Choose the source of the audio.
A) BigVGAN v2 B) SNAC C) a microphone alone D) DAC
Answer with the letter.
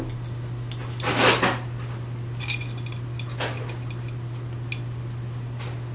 C